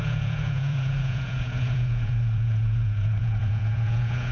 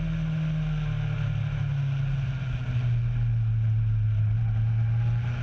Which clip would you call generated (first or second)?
first